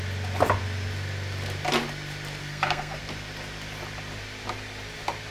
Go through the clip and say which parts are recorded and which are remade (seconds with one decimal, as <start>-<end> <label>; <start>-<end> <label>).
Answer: 0.0-2.4 recorded; 2.4-3.0 remade; 3.0-5.3 recorded